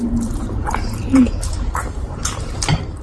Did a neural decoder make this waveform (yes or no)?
yes